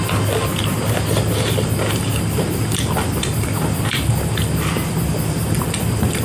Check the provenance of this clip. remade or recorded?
recorded